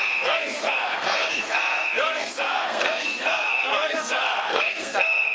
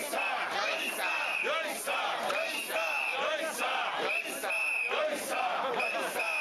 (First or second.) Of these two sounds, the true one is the second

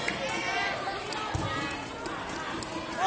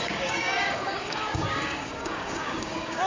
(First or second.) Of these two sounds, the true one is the first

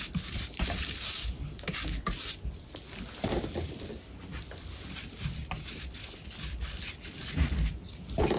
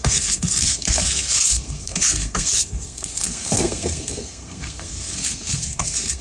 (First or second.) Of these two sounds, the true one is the first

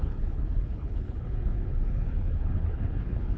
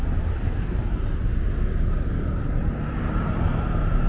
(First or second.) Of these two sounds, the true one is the second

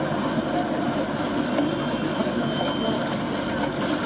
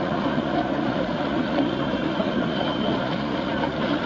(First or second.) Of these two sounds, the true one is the first